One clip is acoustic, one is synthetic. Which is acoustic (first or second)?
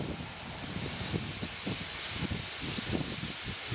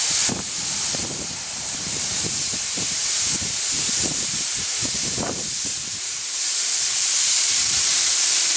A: first